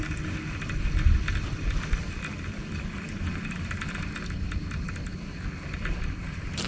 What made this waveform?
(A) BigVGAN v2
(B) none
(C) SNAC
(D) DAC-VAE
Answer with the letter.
B